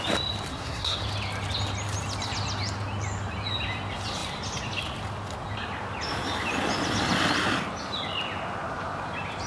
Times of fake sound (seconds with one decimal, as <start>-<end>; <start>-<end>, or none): 0.5-1.0